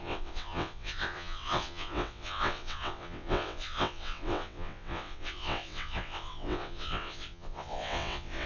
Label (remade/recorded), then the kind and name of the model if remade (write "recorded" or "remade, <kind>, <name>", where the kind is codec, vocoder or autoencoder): remade, vocoder, WaveNeXt